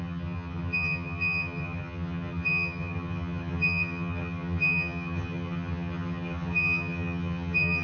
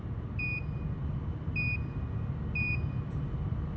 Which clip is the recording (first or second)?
second